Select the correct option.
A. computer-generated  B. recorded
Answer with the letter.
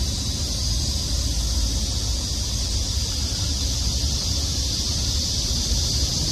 B